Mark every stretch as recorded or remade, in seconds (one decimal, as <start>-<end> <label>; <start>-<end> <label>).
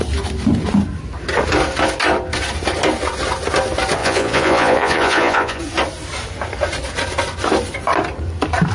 0.0-4.0 recorded; 4.0-5.6 remade; 5.6-8.7 recorded